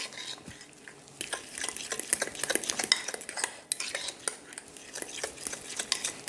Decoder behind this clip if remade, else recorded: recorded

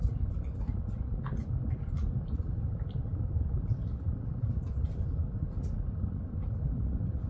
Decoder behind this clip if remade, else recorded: recorded